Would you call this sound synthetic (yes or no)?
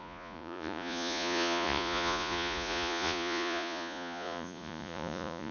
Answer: yes